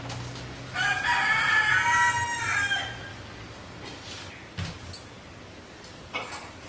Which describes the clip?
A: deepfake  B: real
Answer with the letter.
B